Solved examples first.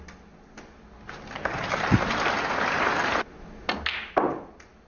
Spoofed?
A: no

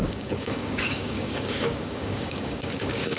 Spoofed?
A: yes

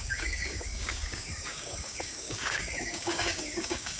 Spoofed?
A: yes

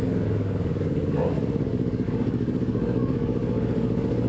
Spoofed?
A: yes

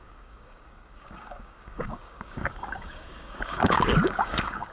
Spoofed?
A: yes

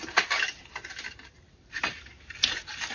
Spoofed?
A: no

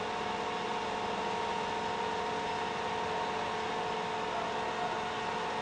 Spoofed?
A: no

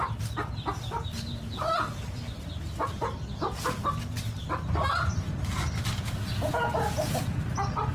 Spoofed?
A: no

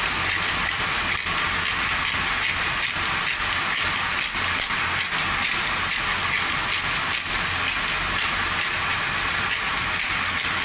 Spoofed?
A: no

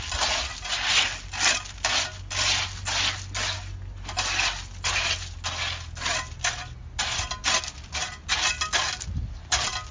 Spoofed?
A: no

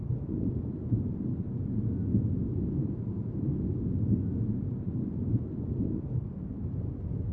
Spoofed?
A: no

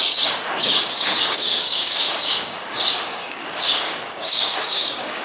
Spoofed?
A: yes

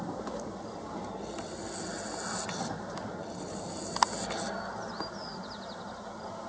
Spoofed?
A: no